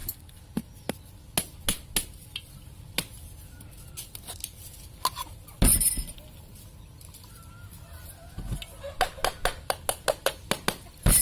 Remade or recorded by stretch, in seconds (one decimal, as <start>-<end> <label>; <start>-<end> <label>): 0.0-11.2 recorded